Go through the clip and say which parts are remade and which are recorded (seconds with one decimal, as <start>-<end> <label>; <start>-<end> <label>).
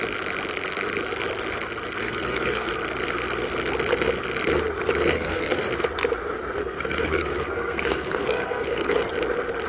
0.0-2.0 recorded; 2.0-2.7 remade; 2.7-5.1 recorded; 5.1-5.7 remade; 5.7-6.6 recorded; 6.6-9.1 remade; 9.1-9.7 recorded